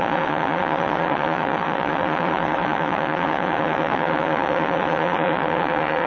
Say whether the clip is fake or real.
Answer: fake